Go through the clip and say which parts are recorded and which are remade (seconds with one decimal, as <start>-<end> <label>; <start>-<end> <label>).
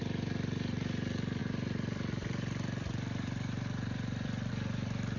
0.0-1.4 recorded; 1.4-4.5 remade; 4.5-5.2 recorded